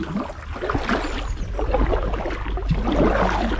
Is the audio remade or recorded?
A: recorded